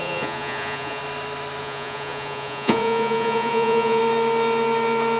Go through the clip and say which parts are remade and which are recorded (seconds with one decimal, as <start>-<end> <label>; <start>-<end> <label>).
0.0-1.0 remade; 1.0-1.6 recorded; 1.6-4.0 remade; 4.0-5.2 recorded